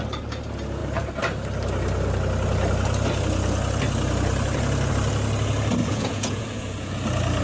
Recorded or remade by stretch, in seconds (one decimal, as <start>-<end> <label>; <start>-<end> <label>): 0.0-5.8 recorded; 5.8-6.9 remade; 6.9-7.4 recorded